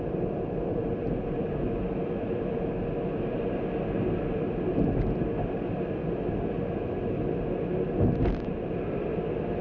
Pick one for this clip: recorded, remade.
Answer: recorded